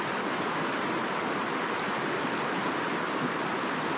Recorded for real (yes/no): yes